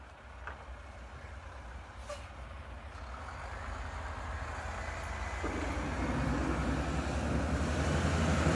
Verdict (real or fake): real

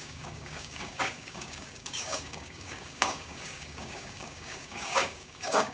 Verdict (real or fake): fake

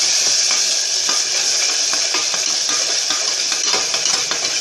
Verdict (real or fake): real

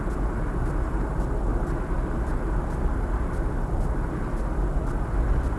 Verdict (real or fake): real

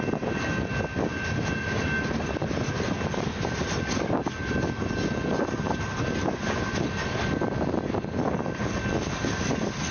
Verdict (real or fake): real